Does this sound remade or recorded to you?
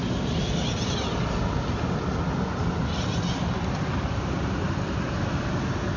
recorded